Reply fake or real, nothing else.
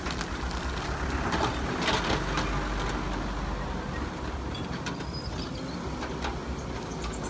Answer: real